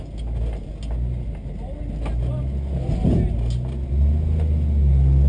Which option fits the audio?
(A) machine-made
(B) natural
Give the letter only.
B